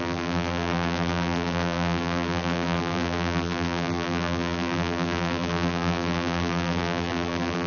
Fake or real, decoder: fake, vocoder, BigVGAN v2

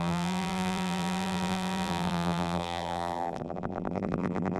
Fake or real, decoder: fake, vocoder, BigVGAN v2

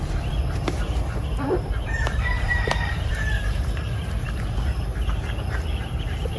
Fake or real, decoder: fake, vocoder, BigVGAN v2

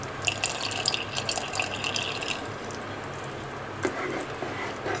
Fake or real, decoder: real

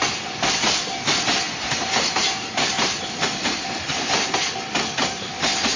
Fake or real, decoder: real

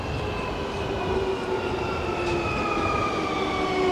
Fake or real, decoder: real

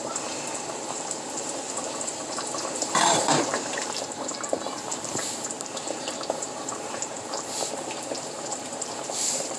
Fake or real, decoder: fake, vocoder, BigVGAN v2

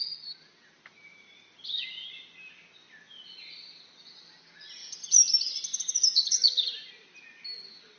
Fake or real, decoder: real